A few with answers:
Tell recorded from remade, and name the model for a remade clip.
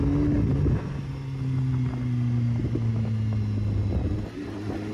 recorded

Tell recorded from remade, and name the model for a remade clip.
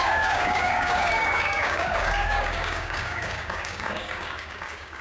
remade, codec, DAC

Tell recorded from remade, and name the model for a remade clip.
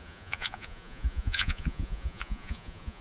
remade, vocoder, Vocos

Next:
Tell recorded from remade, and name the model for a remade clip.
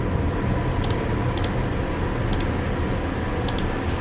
recorded